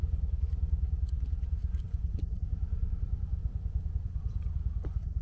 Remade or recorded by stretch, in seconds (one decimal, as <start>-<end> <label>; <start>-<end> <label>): 0.0-1.6 recorded; 1.6-2.2 remade; 2.2-3.4 recorded; 3.4-5.2 remade